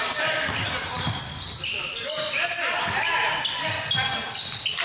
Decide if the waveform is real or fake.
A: real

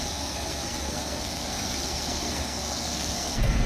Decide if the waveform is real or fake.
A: fake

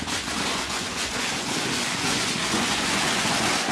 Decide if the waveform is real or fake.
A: fake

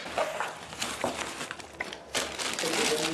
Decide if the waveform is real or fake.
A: real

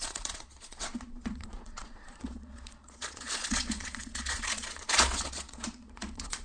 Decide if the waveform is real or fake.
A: fake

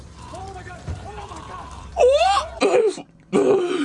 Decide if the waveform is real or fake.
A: fake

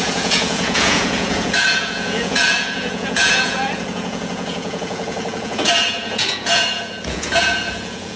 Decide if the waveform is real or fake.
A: fake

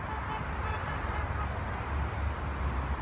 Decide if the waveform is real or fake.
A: real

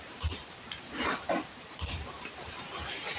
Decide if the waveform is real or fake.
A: fake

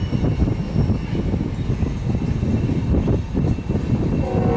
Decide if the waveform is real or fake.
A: real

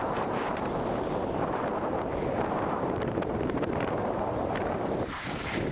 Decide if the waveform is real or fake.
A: fake